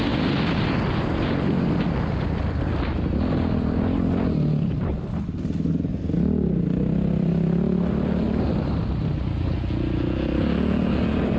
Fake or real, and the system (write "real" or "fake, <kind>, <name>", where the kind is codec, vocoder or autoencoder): real